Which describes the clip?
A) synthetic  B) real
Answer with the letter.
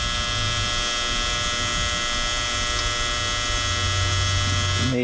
B